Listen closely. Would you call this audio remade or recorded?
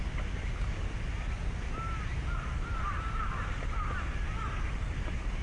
recorded